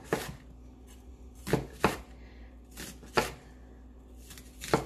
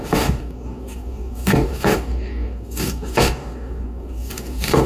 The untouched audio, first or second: first